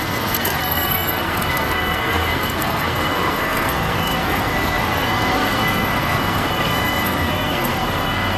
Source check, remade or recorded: remade